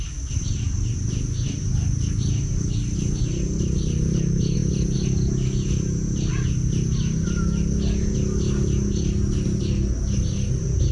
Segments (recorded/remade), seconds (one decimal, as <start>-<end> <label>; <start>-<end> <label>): 0.0-10.9 recorded